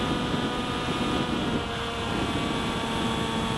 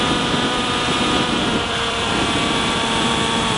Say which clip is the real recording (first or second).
first